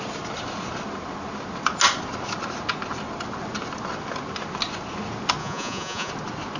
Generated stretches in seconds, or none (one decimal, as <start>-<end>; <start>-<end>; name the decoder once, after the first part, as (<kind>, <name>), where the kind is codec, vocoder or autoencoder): 5.4-6.1 (vocoder, Vocos)